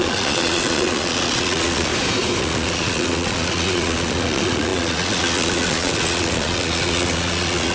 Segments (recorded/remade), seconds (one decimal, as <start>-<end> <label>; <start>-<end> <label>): 0.0-1.9 remade; 1.9-2.4 recorded; 2.4-7.7 remade